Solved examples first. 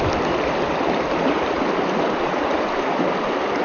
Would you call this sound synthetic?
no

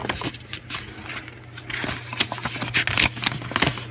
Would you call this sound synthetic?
no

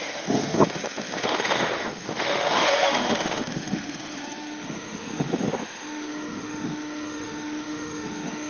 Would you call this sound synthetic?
yes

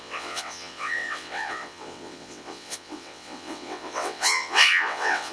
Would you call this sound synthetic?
yes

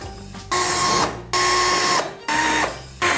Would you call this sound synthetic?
no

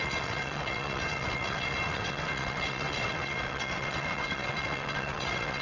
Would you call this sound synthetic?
yes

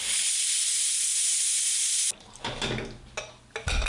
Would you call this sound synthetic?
no